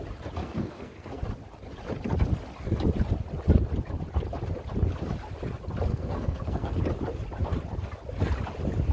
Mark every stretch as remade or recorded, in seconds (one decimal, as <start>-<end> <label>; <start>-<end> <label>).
0.0-0.4 recorded; 0.4-1.2 remade; 1.2-5.9 recorded; 5.9-6.8 remade; 6.8-8.9 recorded